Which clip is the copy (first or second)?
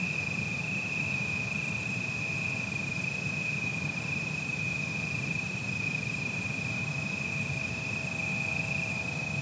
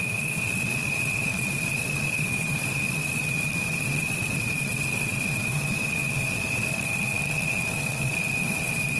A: second